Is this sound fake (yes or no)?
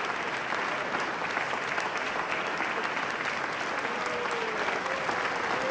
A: no